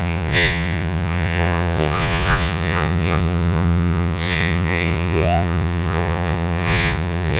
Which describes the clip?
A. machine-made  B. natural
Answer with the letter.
A